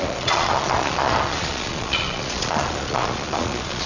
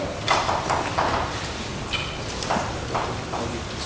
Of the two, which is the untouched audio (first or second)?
second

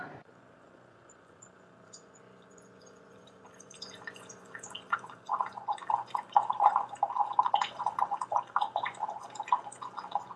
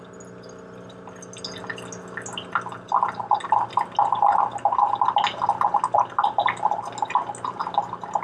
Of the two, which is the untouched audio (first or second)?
second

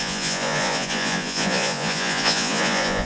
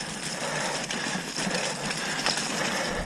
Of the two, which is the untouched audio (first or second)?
second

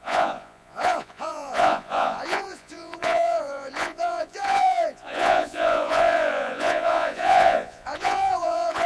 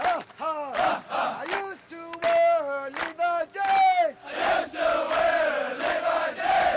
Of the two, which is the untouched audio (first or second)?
second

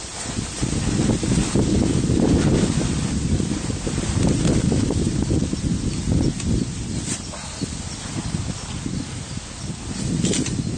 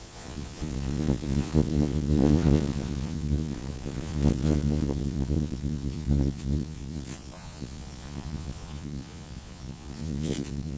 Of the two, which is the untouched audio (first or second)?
first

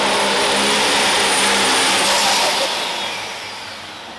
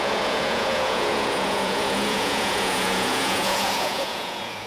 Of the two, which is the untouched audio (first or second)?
first